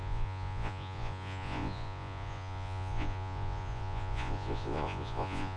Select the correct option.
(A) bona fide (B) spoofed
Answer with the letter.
B